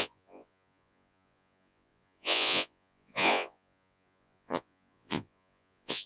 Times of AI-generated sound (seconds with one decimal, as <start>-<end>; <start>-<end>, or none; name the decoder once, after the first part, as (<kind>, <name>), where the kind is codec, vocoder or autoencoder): 0.0-6.1 (vocoder, Vocos)